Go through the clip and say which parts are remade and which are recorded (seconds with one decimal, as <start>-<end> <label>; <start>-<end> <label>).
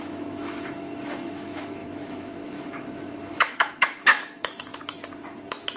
0.0-4.7 remade; 4.7-5.8 recorded